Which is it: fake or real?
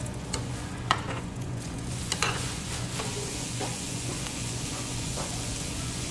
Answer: fake